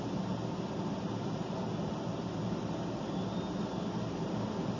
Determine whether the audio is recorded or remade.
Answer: recorded